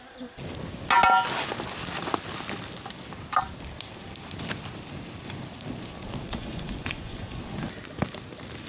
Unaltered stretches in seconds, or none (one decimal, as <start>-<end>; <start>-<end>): 0.0-6.2; 7.4-8.7